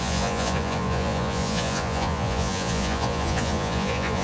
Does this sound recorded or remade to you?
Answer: remade